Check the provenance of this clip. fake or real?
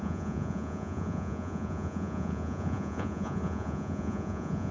fake